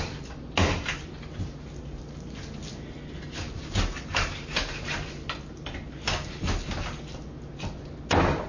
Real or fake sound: real